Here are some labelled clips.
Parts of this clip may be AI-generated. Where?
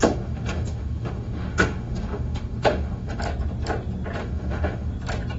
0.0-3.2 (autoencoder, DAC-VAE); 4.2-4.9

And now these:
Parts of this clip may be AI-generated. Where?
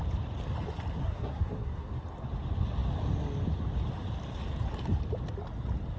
1.0-1.9 (codec, SNAC)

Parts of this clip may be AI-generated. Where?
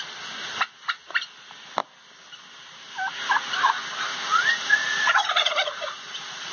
4.1-6.5 (vocoder, Vocos)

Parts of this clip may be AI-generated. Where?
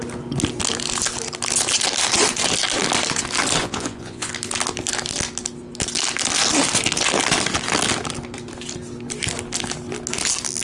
3.6-4.3 (vocoder, Vocos)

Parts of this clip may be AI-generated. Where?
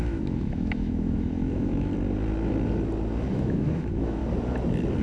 0.0-1.9 (autoencoder, DAC-VAE); 3.3-4.2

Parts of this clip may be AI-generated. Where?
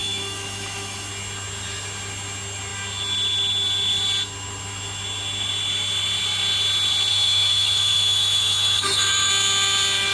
0.0-1.1 (autoencoder, DAC-VAE); 7.1-9.3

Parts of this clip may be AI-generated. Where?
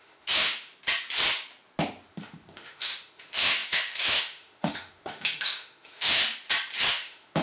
0.0-0.7 (autoencoder, DAC-VAE); 2.1-6.2; 6.9-7.4